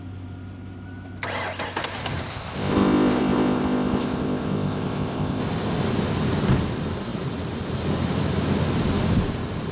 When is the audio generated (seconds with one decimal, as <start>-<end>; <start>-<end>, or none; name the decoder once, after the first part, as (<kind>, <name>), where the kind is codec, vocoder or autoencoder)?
2.3-5.4 (codec, ZipCodec)